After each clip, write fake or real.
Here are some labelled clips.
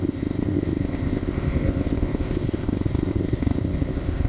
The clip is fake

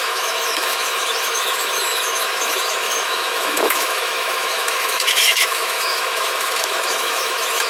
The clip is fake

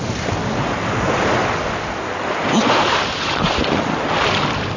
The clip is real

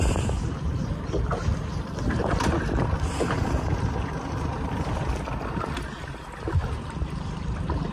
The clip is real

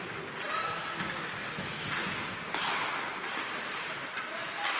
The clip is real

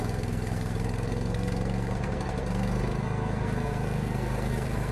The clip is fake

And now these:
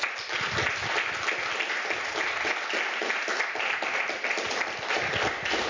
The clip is real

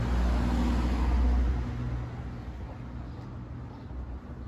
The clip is real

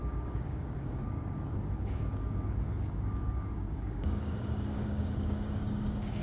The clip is fake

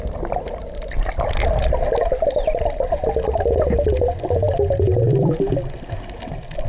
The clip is real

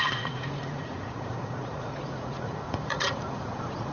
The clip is fake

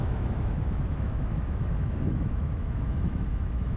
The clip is fake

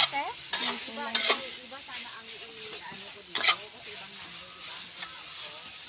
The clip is real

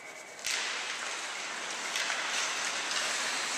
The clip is real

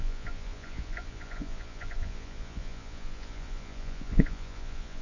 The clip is fake